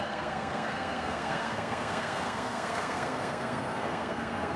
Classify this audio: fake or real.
fake